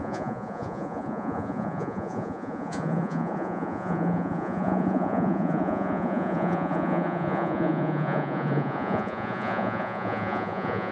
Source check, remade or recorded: remade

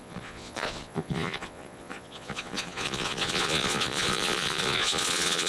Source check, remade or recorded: remade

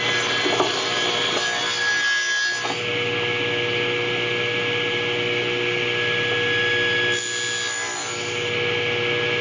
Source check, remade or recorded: recorded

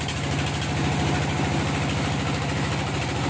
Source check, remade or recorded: recorded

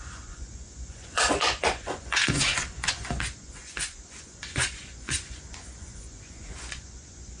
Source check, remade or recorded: remade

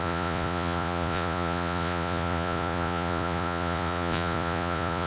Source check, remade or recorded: remade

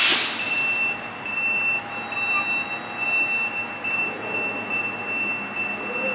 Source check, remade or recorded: recorded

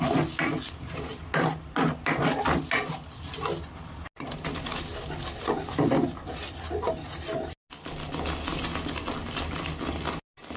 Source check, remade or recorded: recorded